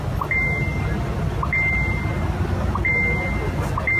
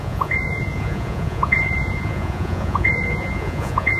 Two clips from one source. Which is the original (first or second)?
first